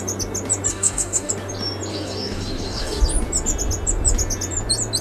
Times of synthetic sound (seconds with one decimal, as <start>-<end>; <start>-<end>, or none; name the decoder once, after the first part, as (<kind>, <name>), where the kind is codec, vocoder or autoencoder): 0.7-1.3 (codec, DAC); 1.9-3.0